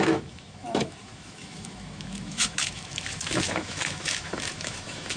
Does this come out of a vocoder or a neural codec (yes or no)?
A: yes